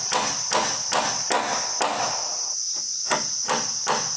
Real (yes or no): yes